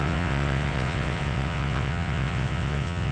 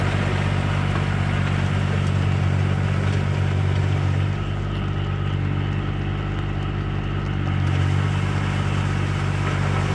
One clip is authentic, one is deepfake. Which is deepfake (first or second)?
first